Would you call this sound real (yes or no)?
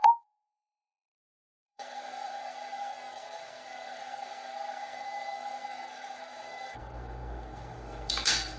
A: no